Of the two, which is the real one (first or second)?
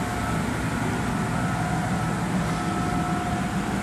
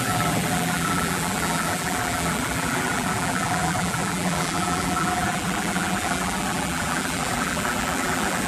first